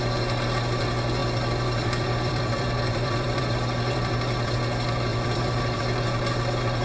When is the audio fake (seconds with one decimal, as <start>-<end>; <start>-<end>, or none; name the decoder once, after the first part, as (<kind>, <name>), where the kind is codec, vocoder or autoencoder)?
1.2-4.6 (vocoder, BigVGAN v2); 5.1-5.8